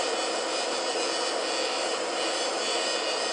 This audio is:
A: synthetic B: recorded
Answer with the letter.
B